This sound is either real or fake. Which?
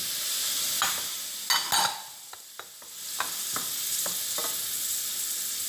real